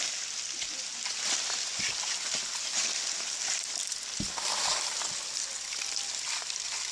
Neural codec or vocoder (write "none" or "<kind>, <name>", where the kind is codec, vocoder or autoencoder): none